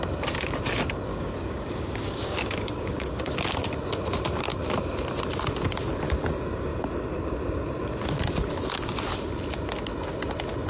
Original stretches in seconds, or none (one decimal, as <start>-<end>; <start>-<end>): 0.0-1.1; 3.2-10.7